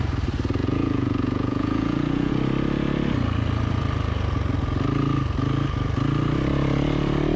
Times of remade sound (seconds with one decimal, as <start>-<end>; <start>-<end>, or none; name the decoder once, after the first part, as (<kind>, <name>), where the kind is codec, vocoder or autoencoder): 0.6-2.3 (vocoder, Vocos)